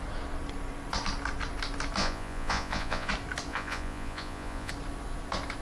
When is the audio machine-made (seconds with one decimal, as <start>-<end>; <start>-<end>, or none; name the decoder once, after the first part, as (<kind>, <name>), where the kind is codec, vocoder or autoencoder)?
2.0-3.1 (vocoder, Vocos); 3.5-4.7